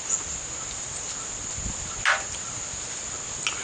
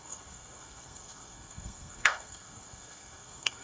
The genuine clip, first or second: first